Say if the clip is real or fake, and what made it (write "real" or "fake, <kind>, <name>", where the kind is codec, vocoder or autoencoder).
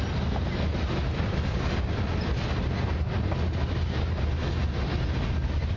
real